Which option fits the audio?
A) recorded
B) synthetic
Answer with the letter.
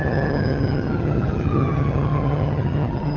B